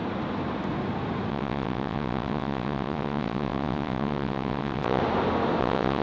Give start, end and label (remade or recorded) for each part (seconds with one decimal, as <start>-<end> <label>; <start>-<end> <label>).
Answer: 0.0-1.3 recorded; 1.3-5.0 remade; 5.0-5.6 recorded; 5.6-6.0 remade